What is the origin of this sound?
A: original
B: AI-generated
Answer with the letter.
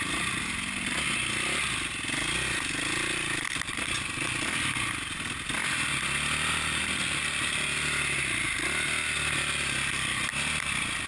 A